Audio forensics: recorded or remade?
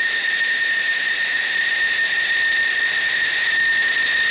recorded